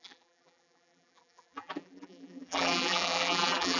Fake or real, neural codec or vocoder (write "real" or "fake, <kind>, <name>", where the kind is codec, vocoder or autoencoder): fake, vocoder, BigVGAN v2